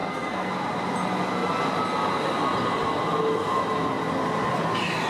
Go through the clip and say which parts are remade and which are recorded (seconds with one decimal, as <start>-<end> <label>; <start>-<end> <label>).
0.0-0.5 remade; 0.5-5.1 recorded